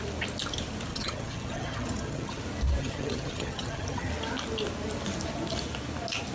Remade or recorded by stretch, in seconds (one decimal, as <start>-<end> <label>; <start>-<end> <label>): 0.0-0.9 recorded; 0.9-2.4 remade; 2.4-2.8 recorded; 2.8-4.1 remade; 4.1-6.3 recorded